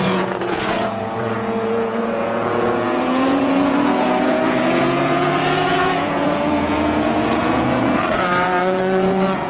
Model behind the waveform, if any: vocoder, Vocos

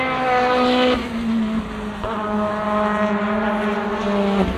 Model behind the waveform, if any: none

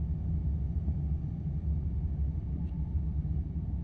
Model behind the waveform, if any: none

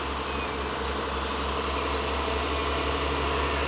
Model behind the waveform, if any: none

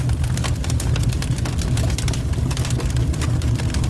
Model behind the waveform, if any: none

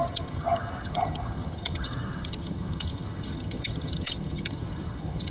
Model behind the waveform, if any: vocoder, HiFi-GAN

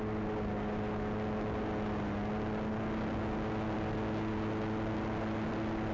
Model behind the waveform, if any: none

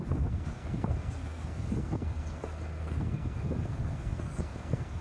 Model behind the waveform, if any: codec, SNAC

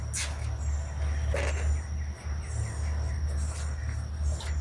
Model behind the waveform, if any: none